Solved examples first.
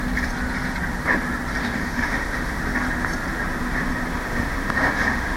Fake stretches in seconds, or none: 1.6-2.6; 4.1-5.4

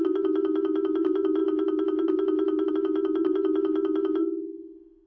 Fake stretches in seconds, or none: 4.2-5.1

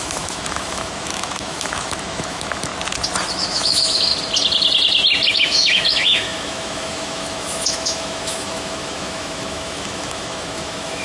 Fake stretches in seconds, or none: 0.0-2.7; 3.3-4.1; 5.3-11.0

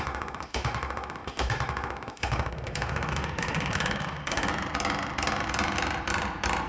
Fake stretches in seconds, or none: 0.0-4.5

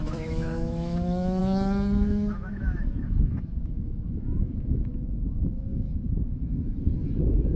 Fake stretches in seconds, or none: 0.0-5.7

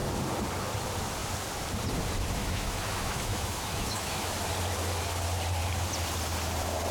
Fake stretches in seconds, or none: 2.4-4.3